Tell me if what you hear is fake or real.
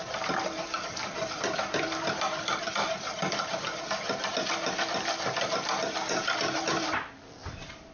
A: fake